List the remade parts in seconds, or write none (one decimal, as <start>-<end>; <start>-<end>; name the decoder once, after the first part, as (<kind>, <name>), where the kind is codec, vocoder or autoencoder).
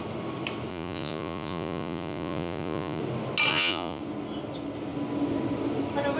0.7-3.0 (vocoder, Vocos); 3.5-4.0